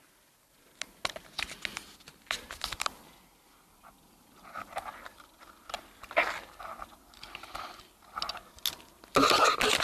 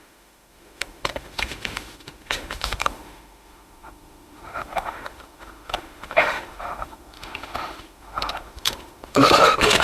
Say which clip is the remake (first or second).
second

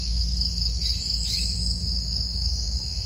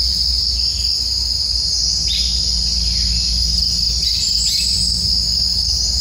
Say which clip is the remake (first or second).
first